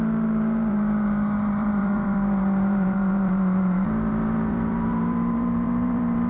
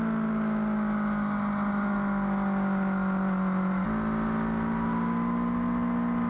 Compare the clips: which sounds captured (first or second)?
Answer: second